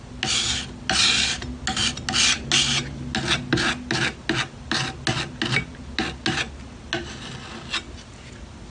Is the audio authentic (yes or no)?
yes